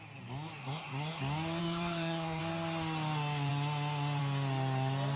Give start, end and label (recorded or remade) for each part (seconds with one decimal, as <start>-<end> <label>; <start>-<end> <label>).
0.0-0.6 recorded; 0.6-1.2 remade; 1.2-1.6 recorded; 1.6-2.4 remade; 2.4-5.2 recorded